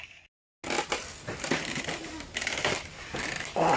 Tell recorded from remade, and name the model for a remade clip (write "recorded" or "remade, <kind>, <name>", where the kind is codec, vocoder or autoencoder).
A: recorded